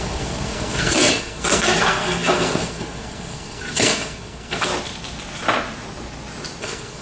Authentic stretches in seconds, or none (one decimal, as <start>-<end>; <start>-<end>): 4.7-6.6